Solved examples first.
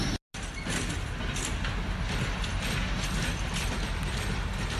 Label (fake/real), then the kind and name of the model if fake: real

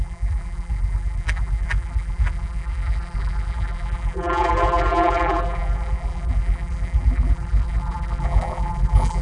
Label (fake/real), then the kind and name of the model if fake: fake, vocoder, BigVGAN v2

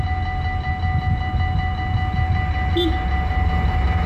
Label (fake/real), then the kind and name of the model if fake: real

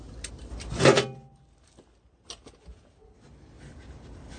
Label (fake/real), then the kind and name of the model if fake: real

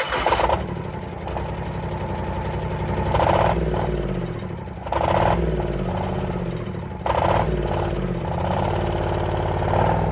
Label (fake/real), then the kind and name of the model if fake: real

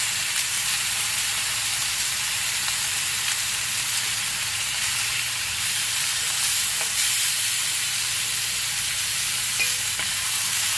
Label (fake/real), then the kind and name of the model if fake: fake, vocoder, BigVGAN v2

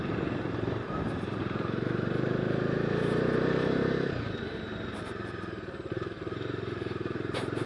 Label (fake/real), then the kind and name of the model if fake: fake, vocoder, BigVGAN v2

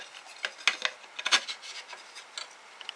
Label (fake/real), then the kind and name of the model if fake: real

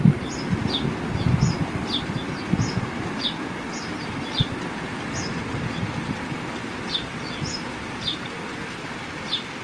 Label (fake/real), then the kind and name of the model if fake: real